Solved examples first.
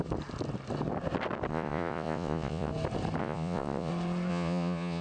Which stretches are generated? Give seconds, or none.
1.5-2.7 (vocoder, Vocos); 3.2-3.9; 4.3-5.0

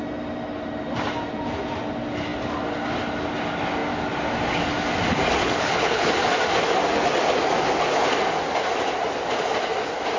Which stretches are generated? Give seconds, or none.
5.4-6.1 (codec, HILCodec)